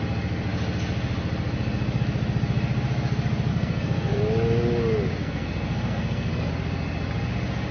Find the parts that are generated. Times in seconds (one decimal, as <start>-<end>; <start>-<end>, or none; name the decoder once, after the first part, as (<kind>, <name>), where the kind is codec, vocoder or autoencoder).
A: 3.5-4.2 (codec, SNAC); 5.2-6.5